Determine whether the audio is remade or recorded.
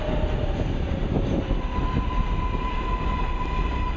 recorded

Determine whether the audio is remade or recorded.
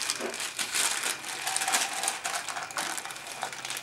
recorded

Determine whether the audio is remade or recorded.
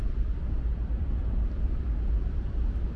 remade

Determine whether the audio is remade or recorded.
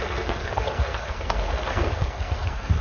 remade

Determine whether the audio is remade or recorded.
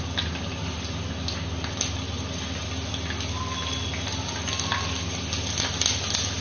recorded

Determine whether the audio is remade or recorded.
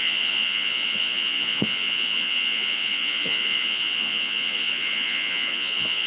remade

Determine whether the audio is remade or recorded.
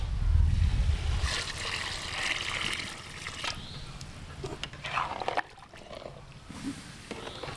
recorded